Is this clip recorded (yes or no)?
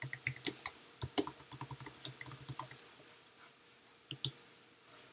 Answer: yes